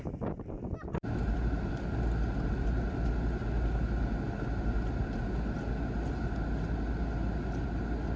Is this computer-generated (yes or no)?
no